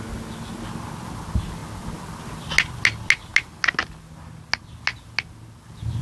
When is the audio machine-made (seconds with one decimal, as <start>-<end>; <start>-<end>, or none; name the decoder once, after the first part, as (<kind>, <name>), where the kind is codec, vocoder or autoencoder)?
none